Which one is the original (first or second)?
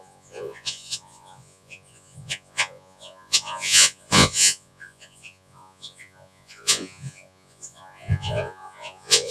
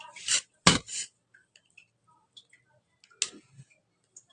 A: second